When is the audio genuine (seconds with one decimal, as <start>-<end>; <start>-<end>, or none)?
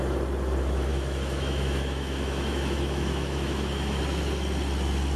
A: 0.0-0.9; 4.0-5.2